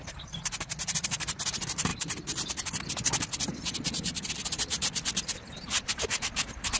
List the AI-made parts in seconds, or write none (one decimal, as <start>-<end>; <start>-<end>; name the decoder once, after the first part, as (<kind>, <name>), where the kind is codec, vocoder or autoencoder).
0.0-6.8 (vocoder, BigVGAN v2)